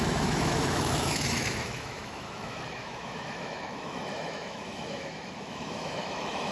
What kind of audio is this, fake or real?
fake